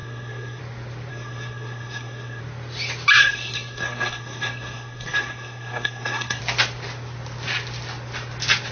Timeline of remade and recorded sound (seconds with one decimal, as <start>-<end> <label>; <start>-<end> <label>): 0.0-0.6 remade; 0.6-1.1 recorded; 1.1-2.4 remade; 2.4-3.2 recorded; 3.2-6.4 remade; 6.4-8.7 recorded